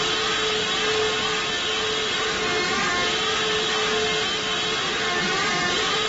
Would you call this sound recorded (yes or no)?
yes